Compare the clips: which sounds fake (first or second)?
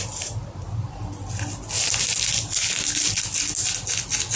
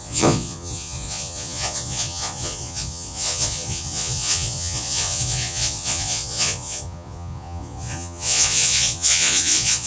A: second